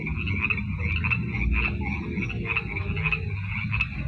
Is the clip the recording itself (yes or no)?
yes